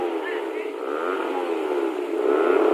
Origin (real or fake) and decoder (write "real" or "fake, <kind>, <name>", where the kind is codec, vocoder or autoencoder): real